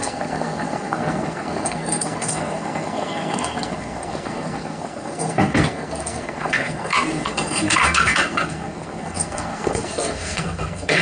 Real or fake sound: fake